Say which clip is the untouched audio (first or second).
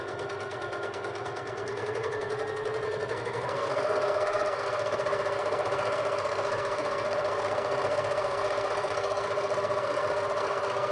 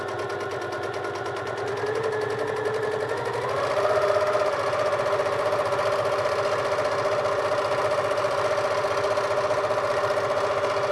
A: second